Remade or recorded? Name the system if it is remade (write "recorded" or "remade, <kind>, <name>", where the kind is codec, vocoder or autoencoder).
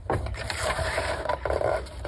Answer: remade, vocoder, BigVGAN v2